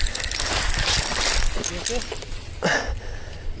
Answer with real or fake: real